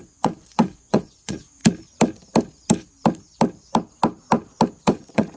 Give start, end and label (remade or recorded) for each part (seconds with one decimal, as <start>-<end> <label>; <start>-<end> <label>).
0.0-1.6 remade; 1.6-4.8 recorded; 4.8-5.4 remade

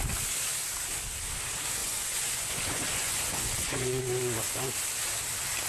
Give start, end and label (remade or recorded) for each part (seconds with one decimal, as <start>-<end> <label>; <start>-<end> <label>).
0.0-1.8 recorded; 1.8-4.0 remade; 4.0-5.7 recorded

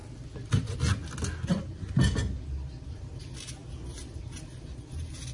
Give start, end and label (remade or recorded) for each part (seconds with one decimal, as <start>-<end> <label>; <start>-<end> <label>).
0.0-5.3 recorded